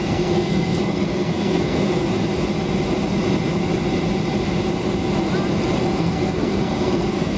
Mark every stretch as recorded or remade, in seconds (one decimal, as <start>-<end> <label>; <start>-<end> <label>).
0.0-2.1 remade; 2.1-6.0 recorded; 6.0-7.4 remade